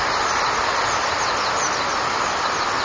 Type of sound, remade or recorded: recorded